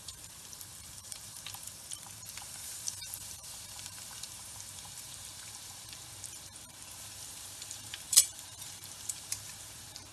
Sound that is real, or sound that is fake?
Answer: fake